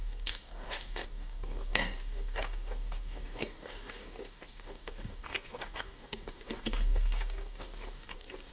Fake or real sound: fake